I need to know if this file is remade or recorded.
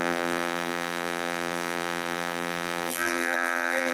remade